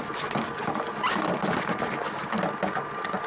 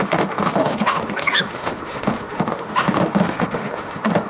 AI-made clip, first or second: second